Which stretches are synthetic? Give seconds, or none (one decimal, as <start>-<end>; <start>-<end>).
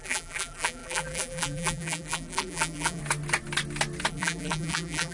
0.0-3.0; 4.1-5.1